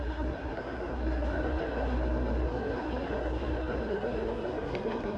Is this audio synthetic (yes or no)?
yes